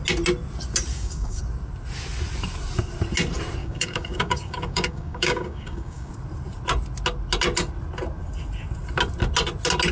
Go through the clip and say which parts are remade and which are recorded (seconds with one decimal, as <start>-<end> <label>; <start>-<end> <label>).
0.0-0.9 recorded; 0.9-1.4 remade; 1.4-3.6 recorded; 3.6-6.1 remade; 6.1-9.9 recorded

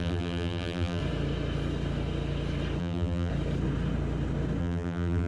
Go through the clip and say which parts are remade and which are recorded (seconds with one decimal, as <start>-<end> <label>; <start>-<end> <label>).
0.0-1.0 remade; 1.0-2.8 recorded; 2.8-3.3 remade; 3.3-4.6 recorded; 4.6-5.3 remade